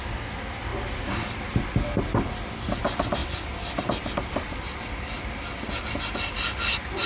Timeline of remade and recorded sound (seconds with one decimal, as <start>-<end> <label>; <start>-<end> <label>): 0.0-0.7 recorded; 0.7-2.0 remade; 2.0-3.2 recorded; 3.2-5.5 remade; 5.5-7.1 recorded